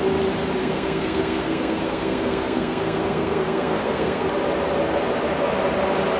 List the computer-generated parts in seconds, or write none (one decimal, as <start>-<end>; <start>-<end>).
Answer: 0.6-4.3